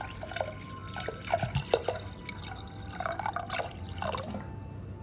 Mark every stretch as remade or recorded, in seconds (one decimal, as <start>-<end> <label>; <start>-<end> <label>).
0.0-5.0 recorded